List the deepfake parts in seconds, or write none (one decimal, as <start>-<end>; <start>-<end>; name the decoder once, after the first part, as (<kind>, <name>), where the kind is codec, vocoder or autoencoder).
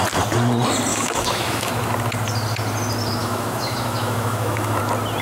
0.9-1.7 (autoencoder, DAC-VAE); 3.2-4.8